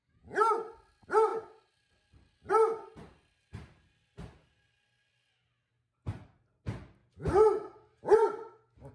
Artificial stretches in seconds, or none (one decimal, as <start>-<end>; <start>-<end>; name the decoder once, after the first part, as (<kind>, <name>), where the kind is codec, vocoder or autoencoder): none

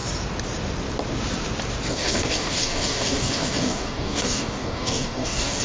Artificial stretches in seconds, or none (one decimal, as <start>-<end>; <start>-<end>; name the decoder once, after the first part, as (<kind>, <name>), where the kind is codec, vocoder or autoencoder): 1.9-5.6 (codec, DAC)